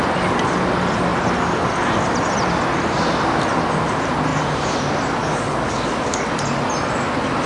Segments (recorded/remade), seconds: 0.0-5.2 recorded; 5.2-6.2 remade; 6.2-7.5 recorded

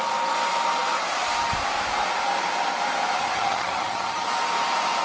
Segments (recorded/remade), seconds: 0.0-3.2 recorded; 3.2-4.3 remade; 4.3-5.0 recorded

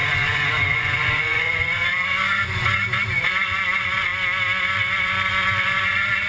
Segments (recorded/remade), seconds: 0.0-4.1 remade; 4.1-4.6 recorded; 4.6-6.3 remade